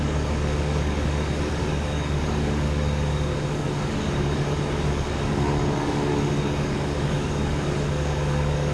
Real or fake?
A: fake